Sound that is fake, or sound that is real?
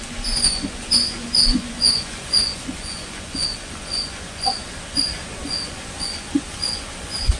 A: fake